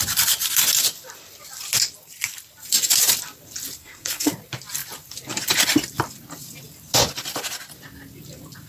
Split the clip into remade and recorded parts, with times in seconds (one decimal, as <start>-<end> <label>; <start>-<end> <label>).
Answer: 0.0-3.8 recorded; 3.8-4.3 remade; 4.3-8.7 recorded